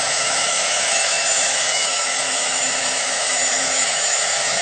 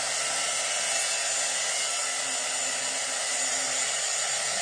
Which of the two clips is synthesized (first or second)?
first